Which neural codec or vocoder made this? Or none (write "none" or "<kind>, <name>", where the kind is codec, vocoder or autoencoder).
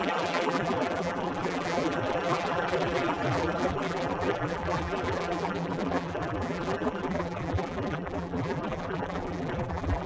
vocoder, BigVGAN v2